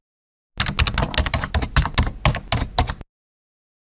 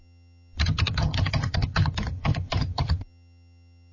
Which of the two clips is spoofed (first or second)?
second